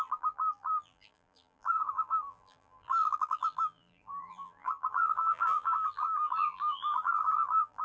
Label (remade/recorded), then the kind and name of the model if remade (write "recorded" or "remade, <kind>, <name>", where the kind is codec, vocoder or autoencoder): remade, vocoder, BigVGAN v2